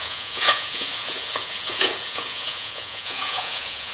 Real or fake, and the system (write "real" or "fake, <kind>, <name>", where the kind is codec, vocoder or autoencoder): fake, vocoder, Vocos